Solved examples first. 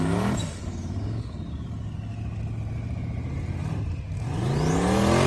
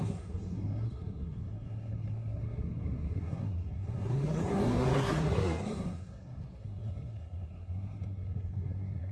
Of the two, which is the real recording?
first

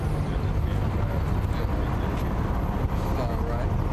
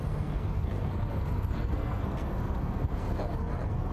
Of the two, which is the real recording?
first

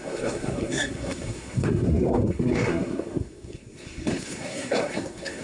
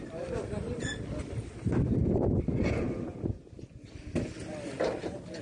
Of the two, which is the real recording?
second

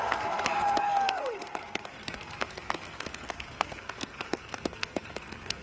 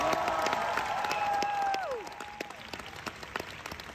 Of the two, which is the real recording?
second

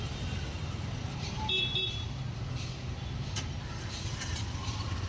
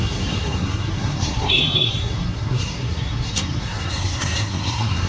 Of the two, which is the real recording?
first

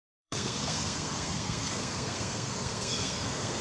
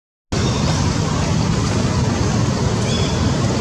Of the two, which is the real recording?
second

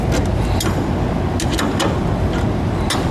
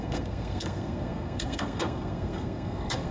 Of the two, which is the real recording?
first